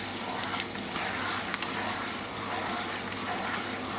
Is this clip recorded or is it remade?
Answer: recorded